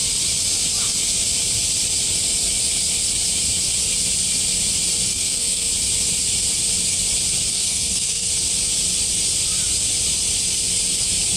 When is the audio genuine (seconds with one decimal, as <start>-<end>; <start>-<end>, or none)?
0.0-5.1; 5.7-7.5; 8.3-11.4